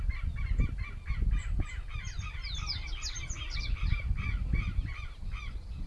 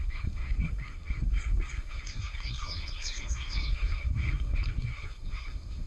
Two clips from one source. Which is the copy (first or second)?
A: second